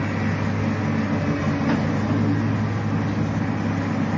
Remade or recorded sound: recorded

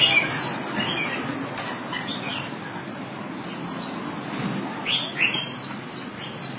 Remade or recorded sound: recorded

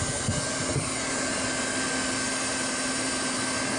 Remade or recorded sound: recorded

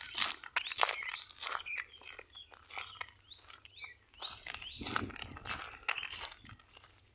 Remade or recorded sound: recorded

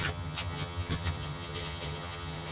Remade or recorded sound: remade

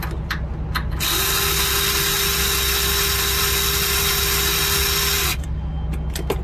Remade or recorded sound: recorded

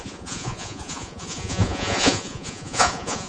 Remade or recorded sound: remade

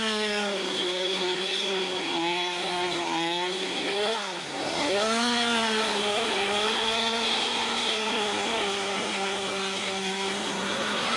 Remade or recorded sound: remade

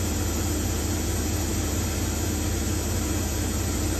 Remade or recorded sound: recorded